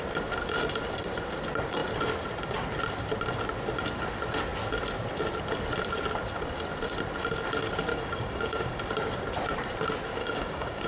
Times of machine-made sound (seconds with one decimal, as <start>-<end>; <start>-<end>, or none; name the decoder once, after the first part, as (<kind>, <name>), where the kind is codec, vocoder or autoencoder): 7.9-8.8 (codec, DAC); 10.2-10.9